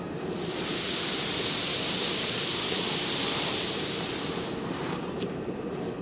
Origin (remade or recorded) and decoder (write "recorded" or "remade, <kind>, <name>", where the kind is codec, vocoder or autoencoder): remade, vocoder, BigVGAN v2